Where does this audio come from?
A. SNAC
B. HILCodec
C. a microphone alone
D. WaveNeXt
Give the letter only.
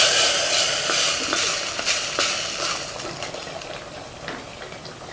C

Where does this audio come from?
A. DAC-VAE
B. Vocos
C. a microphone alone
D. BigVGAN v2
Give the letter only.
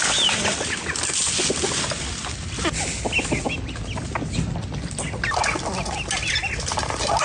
C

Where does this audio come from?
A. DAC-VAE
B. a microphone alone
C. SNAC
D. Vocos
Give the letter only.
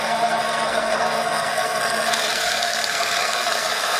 C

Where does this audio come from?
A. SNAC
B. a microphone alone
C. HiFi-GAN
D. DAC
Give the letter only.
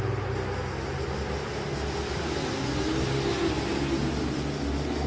B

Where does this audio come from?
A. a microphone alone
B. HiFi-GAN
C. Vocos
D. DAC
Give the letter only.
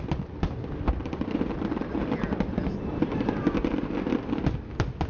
A